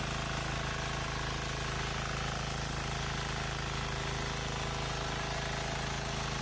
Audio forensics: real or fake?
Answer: real